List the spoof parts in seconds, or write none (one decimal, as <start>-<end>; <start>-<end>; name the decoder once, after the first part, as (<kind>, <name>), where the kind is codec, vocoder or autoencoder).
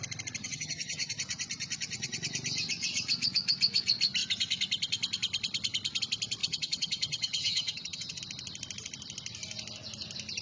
0.4-1.1 (vocoder, HiFi-GAN); 6.4-8.2